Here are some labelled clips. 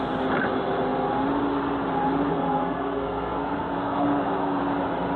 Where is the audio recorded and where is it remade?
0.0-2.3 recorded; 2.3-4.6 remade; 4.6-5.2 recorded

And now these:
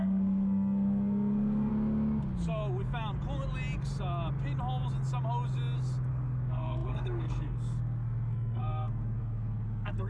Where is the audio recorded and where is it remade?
0.0-1.7 remade; 1.7-6.1 recorded; 6.1-10.1 remade